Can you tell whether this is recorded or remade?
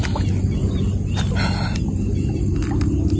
recorded